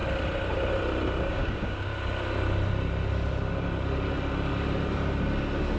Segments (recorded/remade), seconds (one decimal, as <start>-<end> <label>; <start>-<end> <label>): 0.0-1.3 recorded; 1.3-1.9 remade; 1.9-5.8 recorded